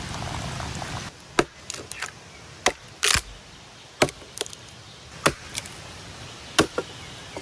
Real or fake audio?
real